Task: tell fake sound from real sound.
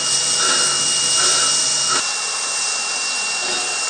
real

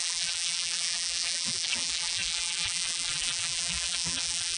fake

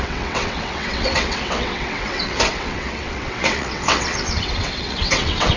fake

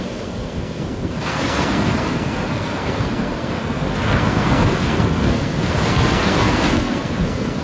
fake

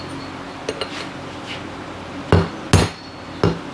real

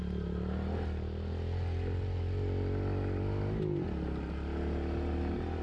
real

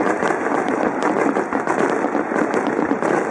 real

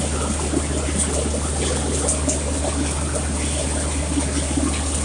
real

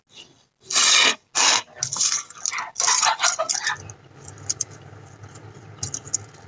real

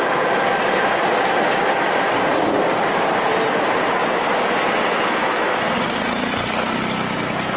real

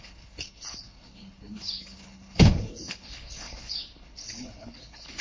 fake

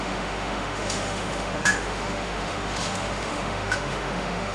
fake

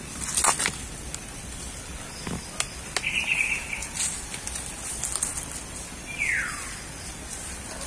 real